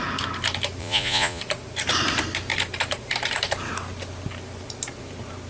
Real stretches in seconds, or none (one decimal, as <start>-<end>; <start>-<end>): 0.0-0.8; 1.4-5.5

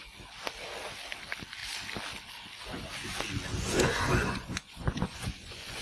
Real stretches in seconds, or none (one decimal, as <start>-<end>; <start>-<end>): 0.0-3.5